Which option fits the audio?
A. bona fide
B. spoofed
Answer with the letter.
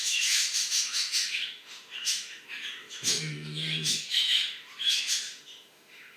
B